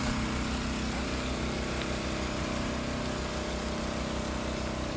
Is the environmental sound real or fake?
real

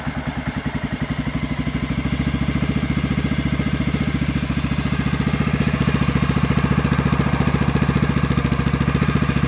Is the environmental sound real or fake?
real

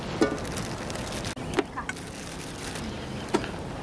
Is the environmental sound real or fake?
real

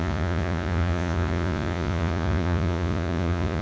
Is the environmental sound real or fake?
fake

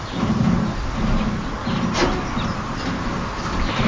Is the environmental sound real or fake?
real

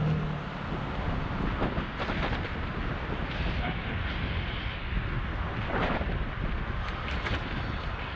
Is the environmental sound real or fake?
real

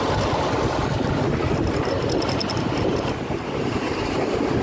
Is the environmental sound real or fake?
real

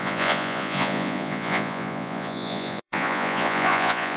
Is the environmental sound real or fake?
fake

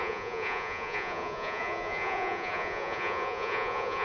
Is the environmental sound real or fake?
fake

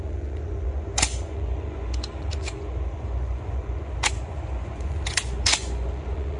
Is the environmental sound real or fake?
fake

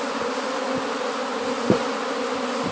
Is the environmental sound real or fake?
real